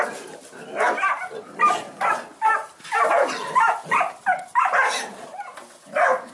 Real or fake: real